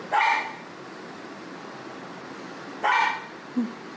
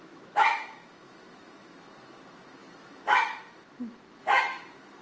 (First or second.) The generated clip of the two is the second